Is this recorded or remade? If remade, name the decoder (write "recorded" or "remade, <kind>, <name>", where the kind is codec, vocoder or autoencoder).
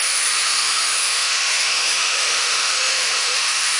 remade, autoencoder, DAC-VAE